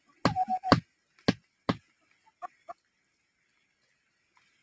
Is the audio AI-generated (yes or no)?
no